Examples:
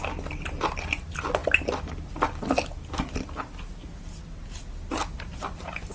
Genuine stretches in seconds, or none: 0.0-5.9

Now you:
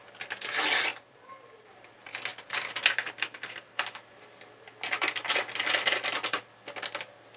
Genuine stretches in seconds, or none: 0.0-7.4

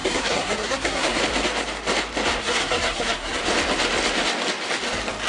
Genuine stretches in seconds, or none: 1.2-2.4; 3.4-5.3

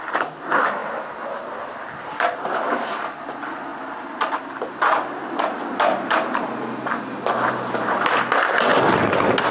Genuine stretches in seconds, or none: 0.0-9.5

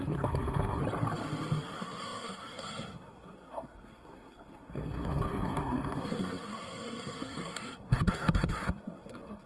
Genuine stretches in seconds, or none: 0.8-1.6

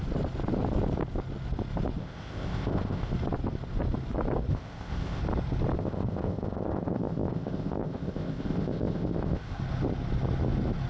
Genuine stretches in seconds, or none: 0.0-2.0; 3.1-4.5; 5.2-5.8; 9.6-10.9